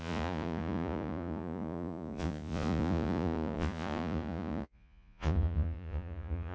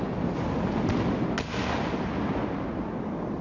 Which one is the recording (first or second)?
second